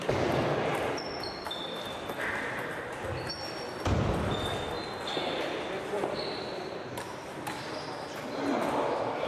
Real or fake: real